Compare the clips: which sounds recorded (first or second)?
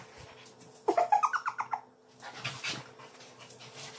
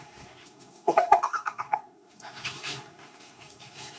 first